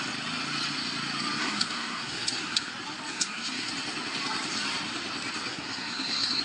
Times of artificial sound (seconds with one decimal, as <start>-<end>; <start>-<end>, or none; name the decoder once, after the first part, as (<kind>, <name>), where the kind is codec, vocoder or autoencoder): 1.4-2.7 (codec, SNAC); 3.1-3.7; 5.5-6.4

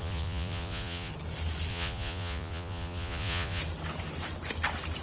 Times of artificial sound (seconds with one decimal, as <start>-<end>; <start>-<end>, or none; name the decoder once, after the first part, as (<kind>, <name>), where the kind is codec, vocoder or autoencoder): 0.0-1.1 (vocoder, Vocos); 1.7-3.6